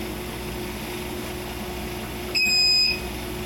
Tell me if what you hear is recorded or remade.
recorded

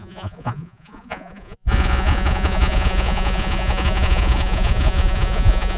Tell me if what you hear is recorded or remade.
remade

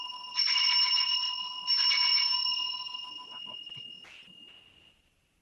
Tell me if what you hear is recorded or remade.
recorded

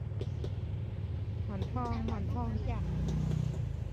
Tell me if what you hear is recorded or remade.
recorded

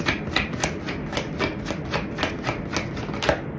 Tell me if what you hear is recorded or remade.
recorded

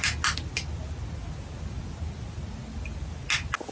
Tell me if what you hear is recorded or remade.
recorded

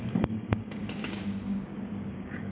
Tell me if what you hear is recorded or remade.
remade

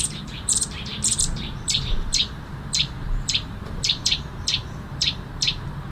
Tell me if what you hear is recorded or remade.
remade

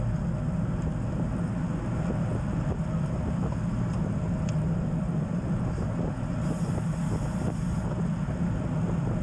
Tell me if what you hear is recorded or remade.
recorded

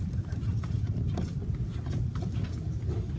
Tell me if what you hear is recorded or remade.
recorded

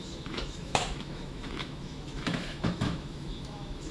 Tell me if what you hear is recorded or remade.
remade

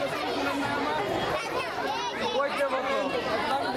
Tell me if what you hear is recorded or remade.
remade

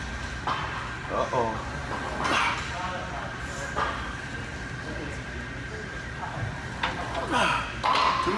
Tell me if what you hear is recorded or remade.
recorded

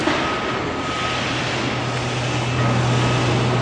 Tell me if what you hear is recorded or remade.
recorded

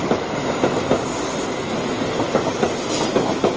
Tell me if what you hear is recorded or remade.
recorded